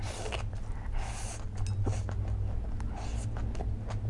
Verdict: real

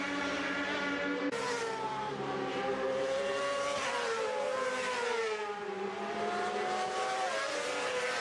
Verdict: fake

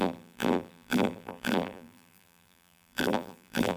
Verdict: fake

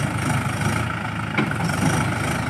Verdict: real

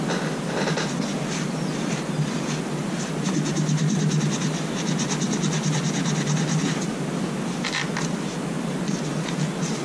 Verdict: real